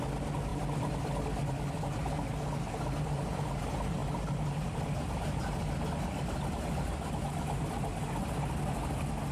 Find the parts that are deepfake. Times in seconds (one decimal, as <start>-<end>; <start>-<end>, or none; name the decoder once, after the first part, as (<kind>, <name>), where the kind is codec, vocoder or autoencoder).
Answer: none